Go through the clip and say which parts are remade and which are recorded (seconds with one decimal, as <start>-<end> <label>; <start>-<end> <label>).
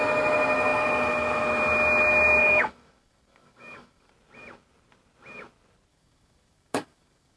0.0-2.4 recorded; 2.4-4.1 remade; 4.1-5.9 recorded; 5.9-7.4 remade